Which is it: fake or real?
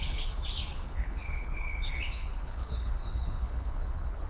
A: fake